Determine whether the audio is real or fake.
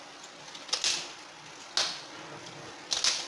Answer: real